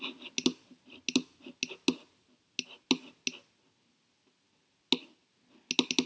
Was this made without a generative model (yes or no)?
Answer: yes